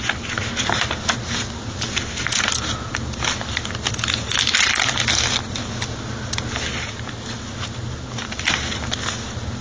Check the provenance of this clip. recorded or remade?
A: recorded